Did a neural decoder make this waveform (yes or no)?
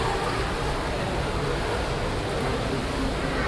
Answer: no